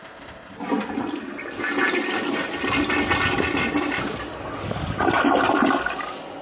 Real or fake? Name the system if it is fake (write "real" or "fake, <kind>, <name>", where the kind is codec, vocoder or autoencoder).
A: real